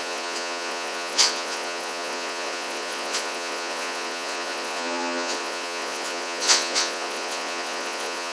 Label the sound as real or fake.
fake